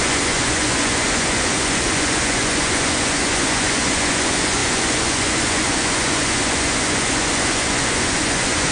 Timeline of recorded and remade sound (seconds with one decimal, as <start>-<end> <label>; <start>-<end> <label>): 0.0-8.7 remade